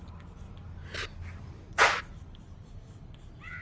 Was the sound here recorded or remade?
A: recorded